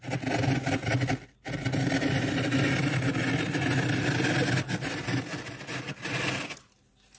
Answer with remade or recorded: recorded